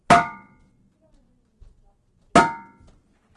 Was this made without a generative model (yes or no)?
yes